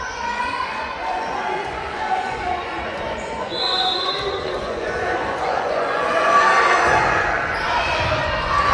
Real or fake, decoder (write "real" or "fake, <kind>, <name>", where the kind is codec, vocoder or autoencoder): fake, vocoder, Vocos